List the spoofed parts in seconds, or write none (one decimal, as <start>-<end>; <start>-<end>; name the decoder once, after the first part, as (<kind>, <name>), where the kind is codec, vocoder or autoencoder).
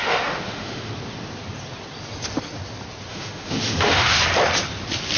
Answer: 0.0-0.9 (autoencoder, DAC-VAE); 3.1-4.2